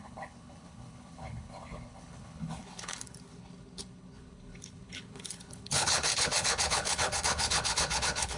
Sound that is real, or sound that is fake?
fake